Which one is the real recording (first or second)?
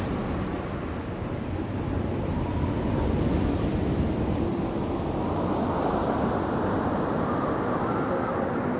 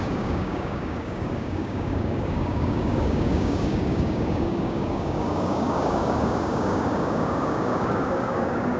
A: first